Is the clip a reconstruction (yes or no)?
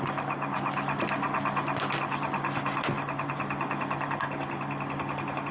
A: no